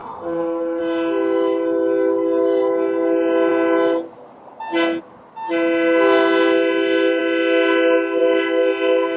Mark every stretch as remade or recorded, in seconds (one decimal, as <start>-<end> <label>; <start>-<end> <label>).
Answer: 0.0-0.8 remade; 0.8-9.2 recorded